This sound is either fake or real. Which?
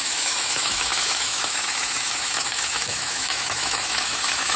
fake